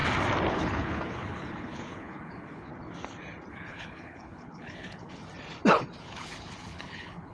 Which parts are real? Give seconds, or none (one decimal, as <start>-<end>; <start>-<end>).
0.0-0.5; 2.7-3.5; 5.2-6.0